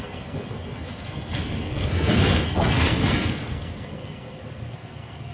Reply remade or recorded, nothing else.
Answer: remade